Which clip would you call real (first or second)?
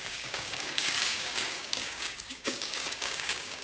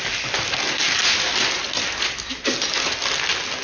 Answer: second